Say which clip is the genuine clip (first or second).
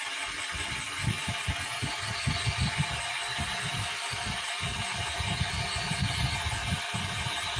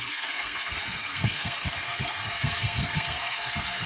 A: first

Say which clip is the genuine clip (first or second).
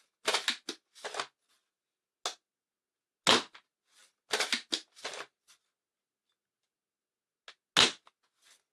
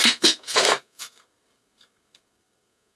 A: first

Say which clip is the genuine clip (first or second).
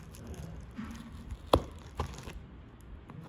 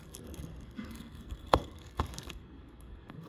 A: first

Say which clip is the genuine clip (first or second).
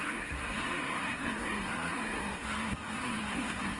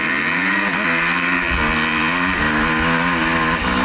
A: second